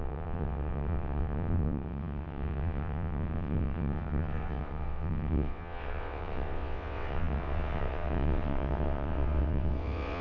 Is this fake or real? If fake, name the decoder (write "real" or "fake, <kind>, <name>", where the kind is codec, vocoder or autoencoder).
fake, vocoder, WaveNeXt